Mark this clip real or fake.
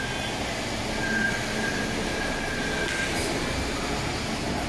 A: real